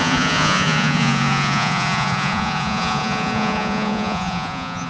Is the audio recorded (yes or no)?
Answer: no